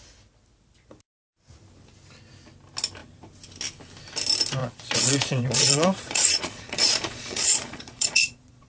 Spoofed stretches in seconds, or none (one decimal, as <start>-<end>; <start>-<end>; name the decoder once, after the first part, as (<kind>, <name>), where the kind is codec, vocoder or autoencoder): 4.6-8.7 (vocoder, Vocos)